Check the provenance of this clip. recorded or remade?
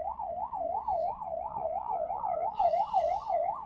remade